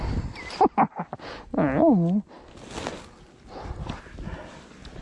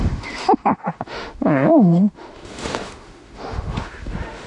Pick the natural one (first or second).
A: first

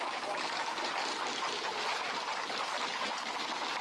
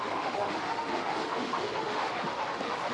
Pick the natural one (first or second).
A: first